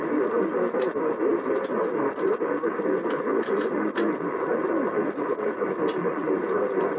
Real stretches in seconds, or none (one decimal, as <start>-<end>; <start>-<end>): 0.0-7.0